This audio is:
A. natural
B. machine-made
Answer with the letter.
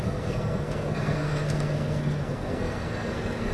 B